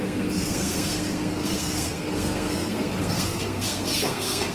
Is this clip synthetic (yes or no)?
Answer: yes